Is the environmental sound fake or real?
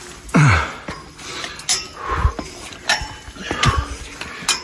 real